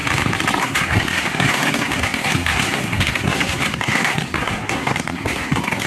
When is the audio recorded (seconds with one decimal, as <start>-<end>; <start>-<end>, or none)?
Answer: 0.0-0.6

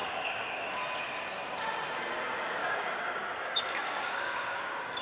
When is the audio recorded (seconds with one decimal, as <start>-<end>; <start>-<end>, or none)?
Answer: 0.6-2.6

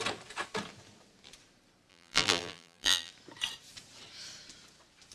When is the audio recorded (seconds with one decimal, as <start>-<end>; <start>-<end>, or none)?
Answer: 0.0-1.9; 3.1-5.1

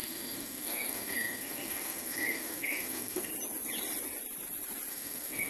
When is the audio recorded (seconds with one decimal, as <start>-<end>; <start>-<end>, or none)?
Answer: 3.3-4.9

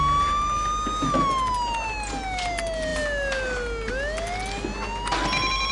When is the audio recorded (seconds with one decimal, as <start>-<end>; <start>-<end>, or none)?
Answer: 0.0-5.7

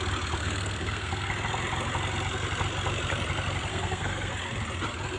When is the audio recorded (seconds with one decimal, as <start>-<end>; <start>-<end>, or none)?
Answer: 0.0-0.4; 1.3-3.7; 4.3-5.2